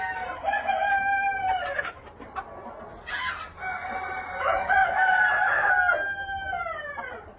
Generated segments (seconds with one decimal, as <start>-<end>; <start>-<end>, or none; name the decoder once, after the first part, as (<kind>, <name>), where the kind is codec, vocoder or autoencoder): 4.8-5.7 (autoencoder, DAC-VAE)